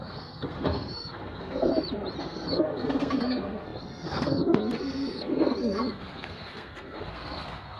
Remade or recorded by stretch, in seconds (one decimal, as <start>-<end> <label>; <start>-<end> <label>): 0.0-1.7 remade; 1.7-2.2 recorded; 2.2-7.8 remade